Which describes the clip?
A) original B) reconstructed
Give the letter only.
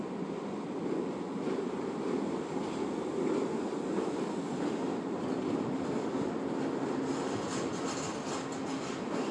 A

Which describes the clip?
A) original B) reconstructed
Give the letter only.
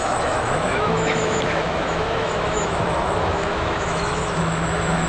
B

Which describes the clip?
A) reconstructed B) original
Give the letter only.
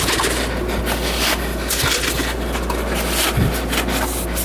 B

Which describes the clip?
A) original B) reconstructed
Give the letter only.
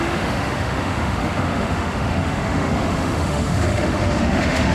B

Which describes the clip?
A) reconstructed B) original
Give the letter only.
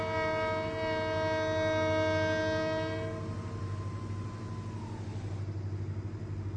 B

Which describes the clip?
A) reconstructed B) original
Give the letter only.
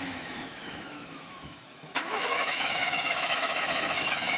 A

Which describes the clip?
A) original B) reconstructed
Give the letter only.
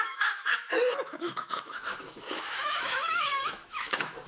B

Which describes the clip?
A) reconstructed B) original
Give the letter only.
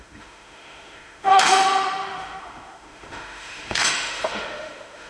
A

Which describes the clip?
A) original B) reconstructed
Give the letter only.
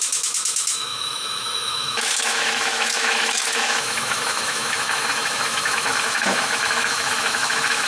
B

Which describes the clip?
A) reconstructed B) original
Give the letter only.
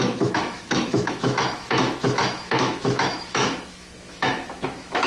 A